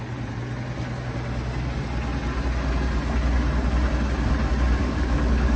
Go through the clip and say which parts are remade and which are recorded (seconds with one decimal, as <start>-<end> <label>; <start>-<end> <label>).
0.0-4.8 recorded; 4.8-5.6 remade